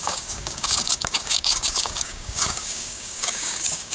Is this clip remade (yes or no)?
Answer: yes